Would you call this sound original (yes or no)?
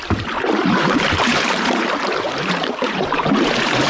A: no